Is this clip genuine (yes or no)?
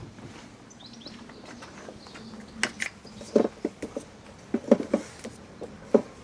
yes